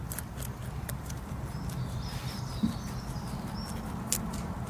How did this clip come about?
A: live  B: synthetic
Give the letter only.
A